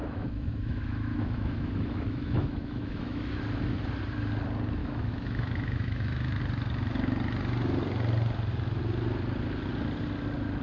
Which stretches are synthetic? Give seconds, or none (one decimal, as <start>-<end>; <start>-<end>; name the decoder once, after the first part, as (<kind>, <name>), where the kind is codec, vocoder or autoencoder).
0.0-3.4 (autoencoder, DAC-VAE); 4.8-6.4